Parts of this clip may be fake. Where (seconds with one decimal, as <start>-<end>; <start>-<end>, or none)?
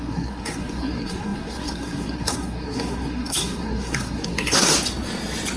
0.0-4.7